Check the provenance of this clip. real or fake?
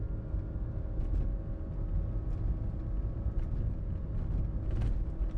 real